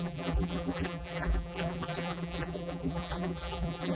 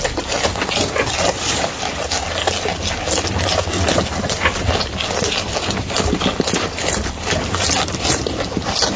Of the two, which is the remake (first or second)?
first